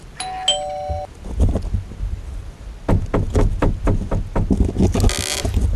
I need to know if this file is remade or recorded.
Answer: recorded